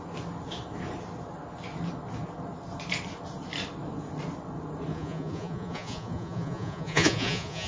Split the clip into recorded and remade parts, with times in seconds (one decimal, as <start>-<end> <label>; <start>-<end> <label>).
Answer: 0.0-4.9 recorded; 4.9-7.7 remade